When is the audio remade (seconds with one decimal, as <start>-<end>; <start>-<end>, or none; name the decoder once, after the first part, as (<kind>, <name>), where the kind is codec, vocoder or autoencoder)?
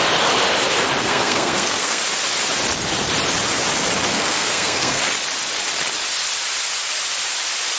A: 1.0-2.0 (codec, SNAC); 4.1-5.0